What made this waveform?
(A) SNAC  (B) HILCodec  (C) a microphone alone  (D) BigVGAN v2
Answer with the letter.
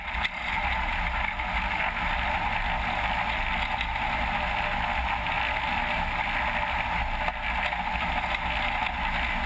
C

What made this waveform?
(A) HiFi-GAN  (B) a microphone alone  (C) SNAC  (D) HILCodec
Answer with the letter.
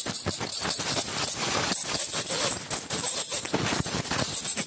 B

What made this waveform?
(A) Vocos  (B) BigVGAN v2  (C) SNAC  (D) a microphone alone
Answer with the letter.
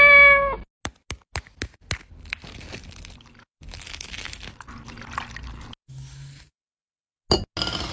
D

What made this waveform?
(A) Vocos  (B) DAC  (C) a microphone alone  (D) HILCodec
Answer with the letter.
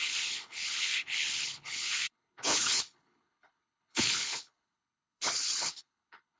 D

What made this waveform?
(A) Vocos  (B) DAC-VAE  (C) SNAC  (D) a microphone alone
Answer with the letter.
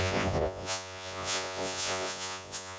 A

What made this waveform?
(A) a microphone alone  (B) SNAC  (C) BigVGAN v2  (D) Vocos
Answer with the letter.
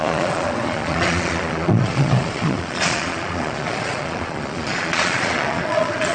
D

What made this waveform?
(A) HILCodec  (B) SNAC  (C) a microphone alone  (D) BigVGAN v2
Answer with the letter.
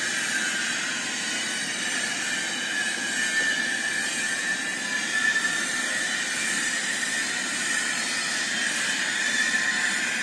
D